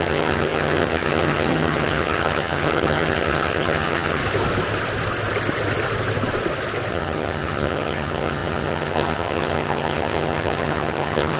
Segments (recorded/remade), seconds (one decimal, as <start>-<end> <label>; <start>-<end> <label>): 0.0-4.2 remade; 4.2-6.9 recorded; 6.9-11.4 remade